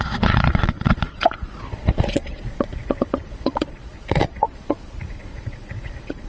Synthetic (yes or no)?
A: yes